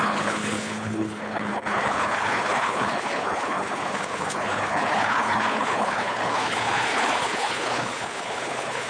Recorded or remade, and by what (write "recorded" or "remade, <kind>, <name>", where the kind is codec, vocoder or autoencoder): remade, codec, HILCodec